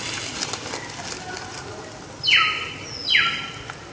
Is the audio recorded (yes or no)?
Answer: yes